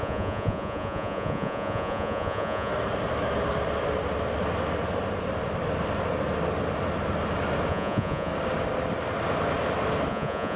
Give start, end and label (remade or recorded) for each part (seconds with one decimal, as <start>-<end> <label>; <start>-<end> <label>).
0.0-2.7 remade; 2.7-7.7 recorded; 7.7-8.3 remade; 8.3-10.1 recorded; 10.1-10.6 remade